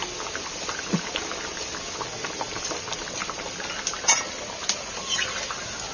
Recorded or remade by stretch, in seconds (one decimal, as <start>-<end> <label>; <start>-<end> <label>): 0.0-5.9 recorded